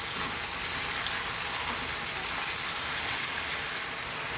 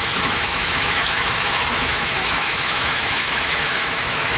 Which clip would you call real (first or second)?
first